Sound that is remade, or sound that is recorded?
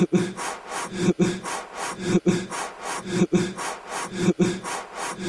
recorded